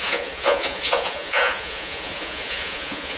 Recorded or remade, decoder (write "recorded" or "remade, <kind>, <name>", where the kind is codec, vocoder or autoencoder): remade, vocoder, Vocos